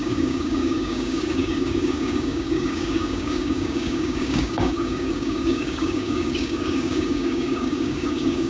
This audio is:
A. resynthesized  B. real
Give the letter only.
A